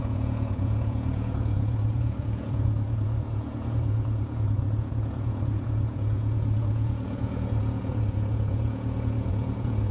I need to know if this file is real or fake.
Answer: fake